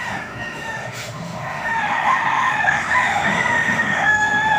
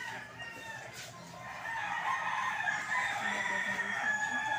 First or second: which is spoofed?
first